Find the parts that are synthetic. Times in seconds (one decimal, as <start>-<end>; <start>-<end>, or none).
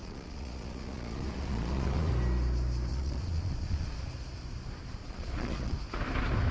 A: 0.0-2.1; 2.9-4.1; 5.0-5.8